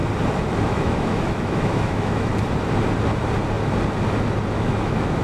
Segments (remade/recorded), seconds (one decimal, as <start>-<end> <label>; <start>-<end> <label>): 0.0-0.6 recorded; 0.6-2.3 remade; 2.3-4.5 recorded; 4.5-5.2 remade